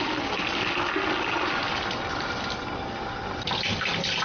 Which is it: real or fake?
real